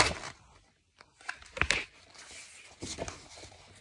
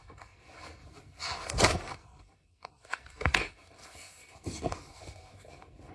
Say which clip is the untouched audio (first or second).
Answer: first